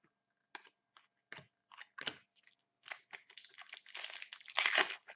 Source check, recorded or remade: recorded